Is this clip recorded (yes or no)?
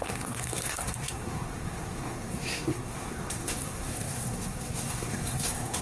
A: no